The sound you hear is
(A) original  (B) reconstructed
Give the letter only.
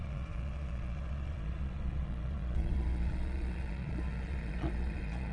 B